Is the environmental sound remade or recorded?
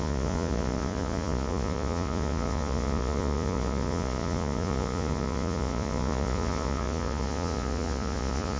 remade